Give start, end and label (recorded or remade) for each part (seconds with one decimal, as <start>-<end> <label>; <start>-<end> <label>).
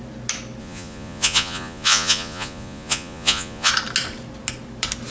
0.0-0.6 recorded; 0.6-3.7 remade; 3.7-5.1 recorded